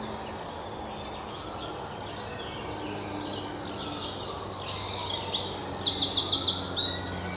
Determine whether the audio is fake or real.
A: real